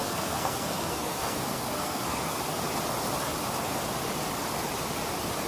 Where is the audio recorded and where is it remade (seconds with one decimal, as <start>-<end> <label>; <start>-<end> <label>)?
0.0-2.4 remade; 2.4-5.5 recorded